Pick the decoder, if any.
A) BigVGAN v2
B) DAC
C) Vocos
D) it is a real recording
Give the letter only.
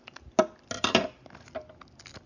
D